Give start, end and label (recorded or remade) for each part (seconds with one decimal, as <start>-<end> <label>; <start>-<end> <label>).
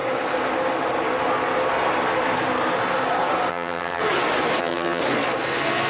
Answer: 0.0-3.5 recorded; 3.5-4.0 remade; 4.0-4.6 recorded; 4.6-5.0 remade; 5.0-5.9 recorded